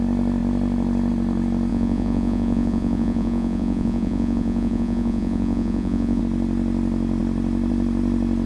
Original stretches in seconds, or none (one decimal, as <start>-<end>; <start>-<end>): 0.0-1.7; 6.2-8.5